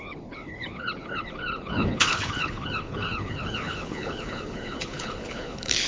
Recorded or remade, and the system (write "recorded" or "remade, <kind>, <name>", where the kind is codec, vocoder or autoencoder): remade, codec, HILCodec